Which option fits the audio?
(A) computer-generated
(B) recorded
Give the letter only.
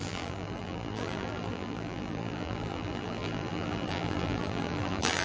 A